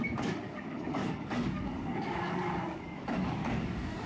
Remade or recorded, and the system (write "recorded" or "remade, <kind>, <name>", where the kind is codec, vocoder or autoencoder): remade, codec, DAC